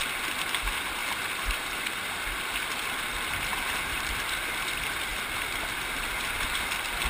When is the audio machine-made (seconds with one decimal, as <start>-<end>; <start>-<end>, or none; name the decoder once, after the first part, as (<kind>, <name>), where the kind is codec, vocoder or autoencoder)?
1.0-2.5 (vocoder, BigVGAN v2); 3.5-4.1

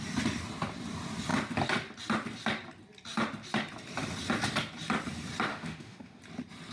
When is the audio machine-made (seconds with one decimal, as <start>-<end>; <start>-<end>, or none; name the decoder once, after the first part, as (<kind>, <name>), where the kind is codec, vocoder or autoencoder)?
5.5-6.2 (autoencoder, DAC-VAE)

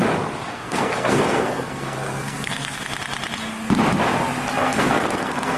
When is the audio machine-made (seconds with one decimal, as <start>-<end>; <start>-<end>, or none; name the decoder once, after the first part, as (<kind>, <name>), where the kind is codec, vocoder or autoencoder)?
0.5-2.8 (codec, SNAC); 4.6-5.6